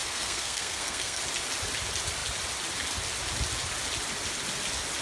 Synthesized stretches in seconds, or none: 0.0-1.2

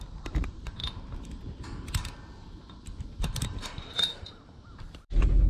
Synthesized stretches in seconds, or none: 0.0-0.8; 3.2-5.5